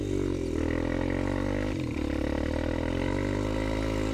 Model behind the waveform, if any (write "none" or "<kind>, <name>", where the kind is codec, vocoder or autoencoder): none